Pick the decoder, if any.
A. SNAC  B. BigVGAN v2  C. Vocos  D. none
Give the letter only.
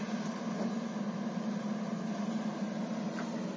D